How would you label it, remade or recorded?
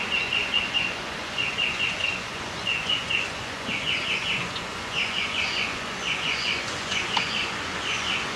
remade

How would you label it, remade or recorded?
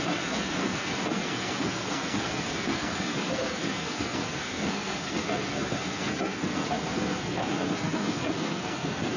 remade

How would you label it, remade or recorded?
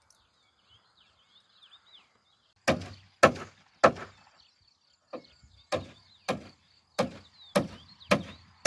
recorded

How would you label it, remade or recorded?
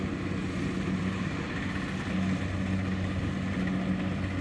recorded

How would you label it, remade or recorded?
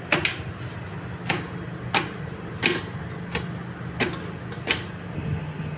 recorded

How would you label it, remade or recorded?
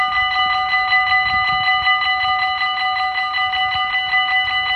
recorded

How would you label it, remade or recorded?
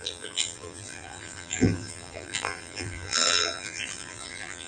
remade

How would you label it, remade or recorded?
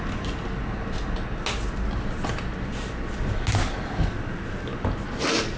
recorded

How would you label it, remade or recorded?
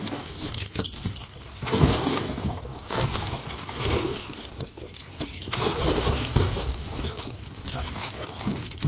remade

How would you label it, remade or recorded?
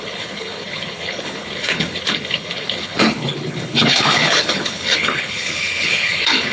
remade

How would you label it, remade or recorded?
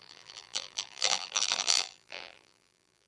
remade